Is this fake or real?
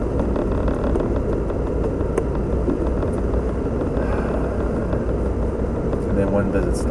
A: real